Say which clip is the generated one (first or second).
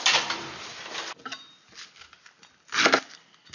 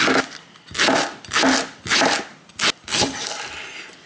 second